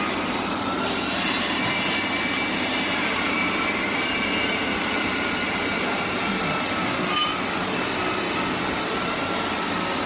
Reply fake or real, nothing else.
real